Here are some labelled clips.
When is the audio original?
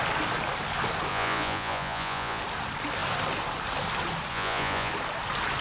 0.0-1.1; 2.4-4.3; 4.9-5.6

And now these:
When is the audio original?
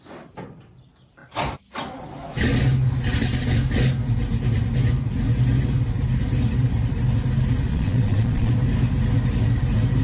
0.0-7.7; 8.5-10.0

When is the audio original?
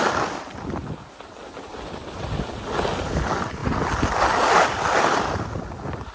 0.0-6.1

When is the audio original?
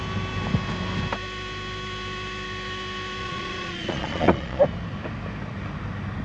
0.0-3.2; 4.6-6.2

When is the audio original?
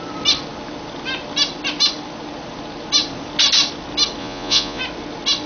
0.0-4.2; 4.8-5.5